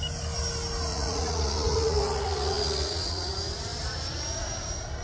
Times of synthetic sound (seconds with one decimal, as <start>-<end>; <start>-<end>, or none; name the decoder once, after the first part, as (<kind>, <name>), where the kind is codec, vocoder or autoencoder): 0.9-3.3 (vocoder, Vocos)